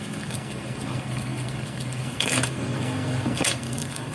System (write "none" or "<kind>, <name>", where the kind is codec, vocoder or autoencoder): codec, SNAC